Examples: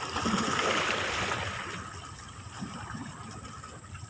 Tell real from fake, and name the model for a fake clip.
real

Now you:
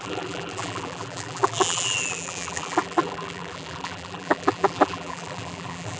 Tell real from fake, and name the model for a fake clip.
fake, vocoder, BigVGAN v2